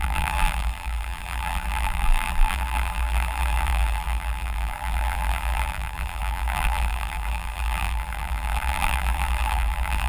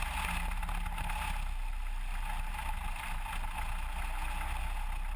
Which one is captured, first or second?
second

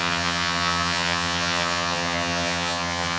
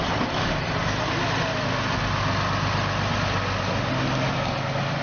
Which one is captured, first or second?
second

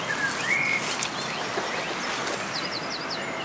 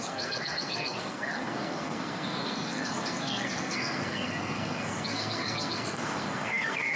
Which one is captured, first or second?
first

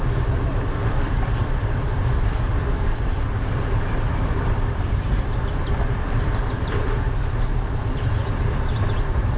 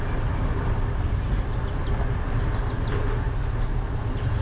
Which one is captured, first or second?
second